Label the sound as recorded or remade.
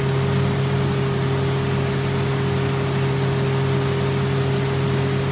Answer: recorded